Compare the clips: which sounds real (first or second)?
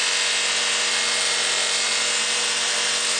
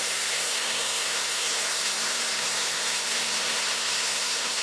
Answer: first